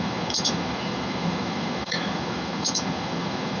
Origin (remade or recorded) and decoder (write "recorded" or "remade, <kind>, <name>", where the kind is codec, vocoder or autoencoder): remade, autoencoder, DAC-VAE